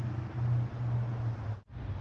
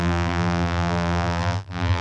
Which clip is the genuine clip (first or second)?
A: first